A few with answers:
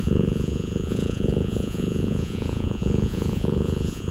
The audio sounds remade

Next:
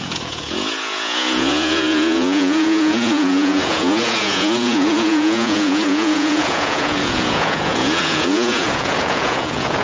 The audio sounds remade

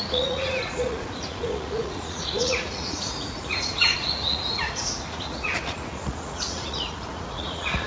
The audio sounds remade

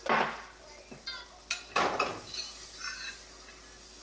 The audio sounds recorded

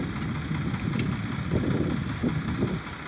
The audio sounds recorded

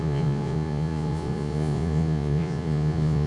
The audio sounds remade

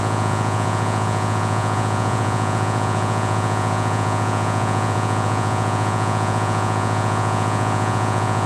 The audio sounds remade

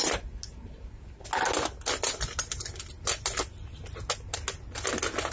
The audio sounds recorded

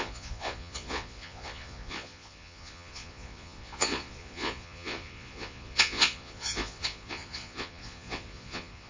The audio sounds remade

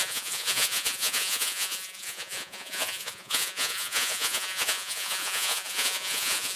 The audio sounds remade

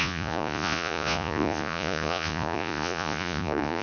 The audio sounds remade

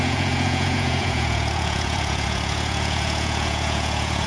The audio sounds remade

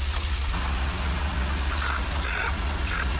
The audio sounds remade